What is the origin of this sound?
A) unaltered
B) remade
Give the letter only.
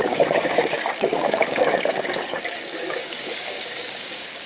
B